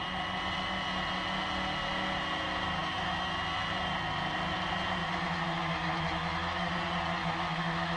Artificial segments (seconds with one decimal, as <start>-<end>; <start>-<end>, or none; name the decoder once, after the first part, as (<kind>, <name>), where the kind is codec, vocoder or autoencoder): 2.8-3.3 (autoencoder, DAC-VAE); 5.0-6.7; 7.2-8.0